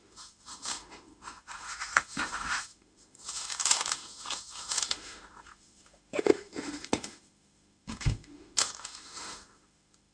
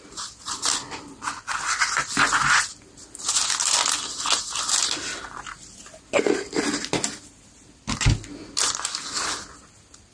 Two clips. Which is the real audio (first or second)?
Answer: second